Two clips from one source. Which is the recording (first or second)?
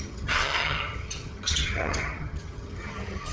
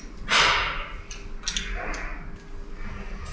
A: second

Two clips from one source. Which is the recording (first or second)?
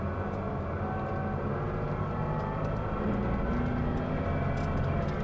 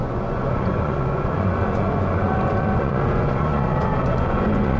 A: first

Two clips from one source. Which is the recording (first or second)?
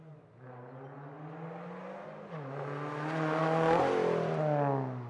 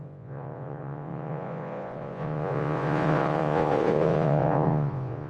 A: first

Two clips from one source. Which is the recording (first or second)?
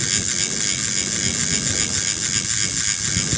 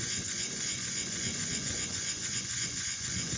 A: first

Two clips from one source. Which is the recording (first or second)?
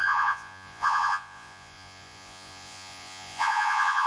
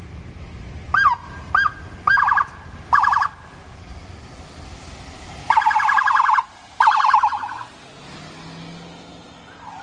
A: second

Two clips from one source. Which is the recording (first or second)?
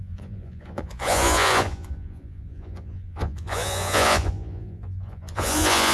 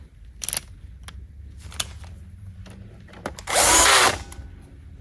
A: second